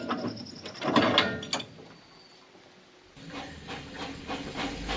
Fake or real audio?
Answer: real